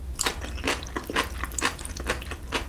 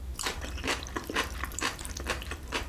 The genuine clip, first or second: first